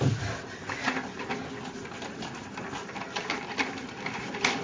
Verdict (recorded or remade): recorded